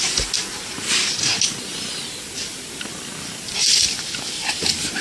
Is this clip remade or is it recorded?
recorded